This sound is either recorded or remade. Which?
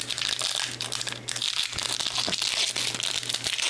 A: recorded